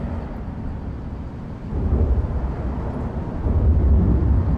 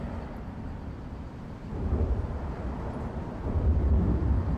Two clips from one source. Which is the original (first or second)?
first